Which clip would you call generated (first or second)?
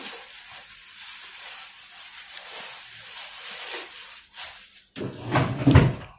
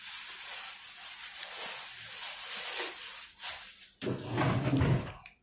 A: first